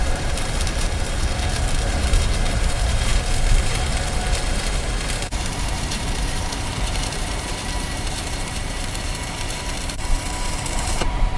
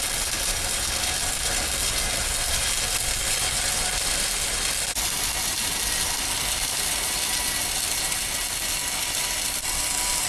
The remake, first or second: first